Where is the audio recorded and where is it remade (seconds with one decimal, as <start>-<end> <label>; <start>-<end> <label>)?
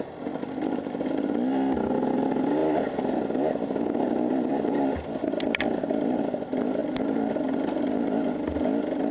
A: 0.0-9.1 recorded